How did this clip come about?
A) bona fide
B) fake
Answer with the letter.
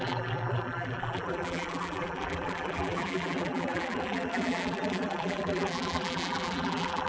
B